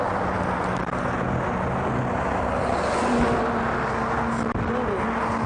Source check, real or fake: real